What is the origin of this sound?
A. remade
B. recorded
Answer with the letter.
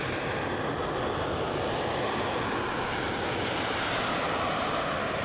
B